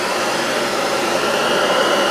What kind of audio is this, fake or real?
fake